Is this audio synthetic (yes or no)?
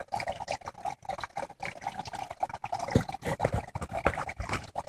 no